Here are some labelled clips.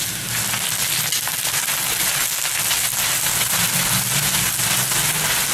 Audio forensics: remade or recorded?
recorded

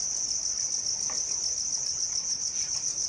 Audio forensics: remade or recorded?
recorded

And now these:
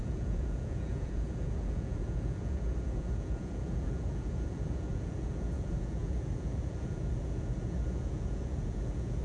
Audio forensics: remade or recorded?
remade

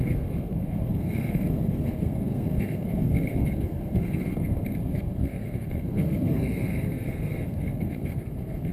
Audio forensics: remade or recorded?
remade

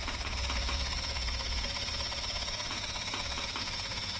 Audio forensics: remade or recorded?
remade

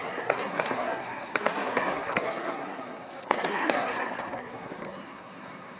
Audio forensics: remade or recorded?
remade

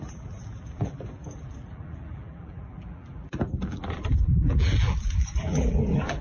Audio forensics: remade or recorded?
remade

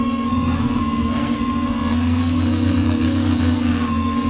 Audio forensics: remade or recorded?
remade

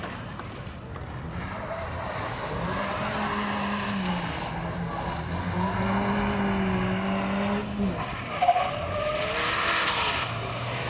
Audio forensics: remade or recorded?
recorded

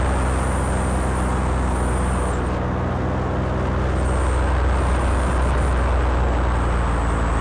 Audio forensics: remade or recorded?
recorded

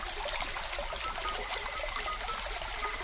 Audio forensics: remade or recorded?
recorded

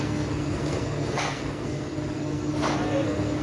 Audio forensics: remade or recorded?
remade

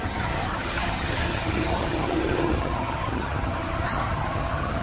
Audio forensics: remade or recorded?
remade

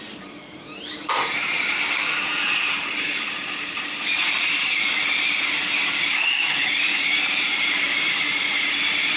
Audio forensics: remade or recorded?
remade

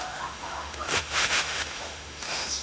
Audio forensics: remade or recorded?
remade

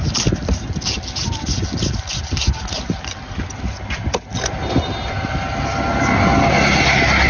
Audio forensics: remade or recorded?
recorded